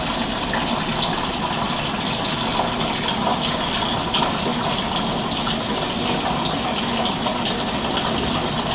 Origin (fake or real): real